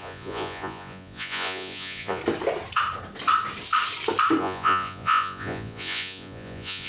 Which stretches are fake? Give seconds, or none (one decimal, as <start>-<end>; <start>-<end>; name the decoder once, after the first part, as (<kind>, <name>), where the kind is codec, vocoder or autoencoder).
0.0-2.2 (vocoder, Vocos); 4.4-6.9